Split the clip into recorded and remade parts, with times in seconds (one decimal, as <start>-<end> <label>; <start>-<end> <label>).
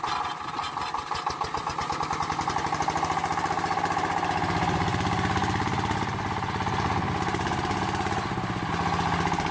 0.0-9.5 recorded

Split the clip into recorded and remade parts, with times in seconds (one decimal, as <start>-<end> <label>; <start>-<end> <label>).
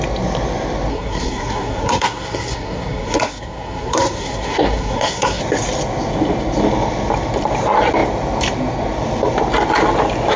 0.0-0.9 recorded; 0.9-5.4 remade; 5.4-10.4 recorded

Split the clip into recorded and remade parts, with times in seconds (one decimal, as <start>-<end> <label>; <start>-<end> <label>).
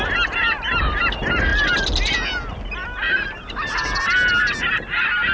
0.0-5.3 recorded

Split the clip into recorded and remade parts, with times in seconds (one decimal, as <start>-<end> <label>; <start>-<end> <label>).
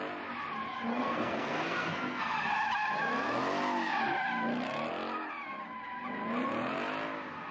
0.0-0.9 recorded; 0.9-2.5 remade; 2.5-7.5 recorded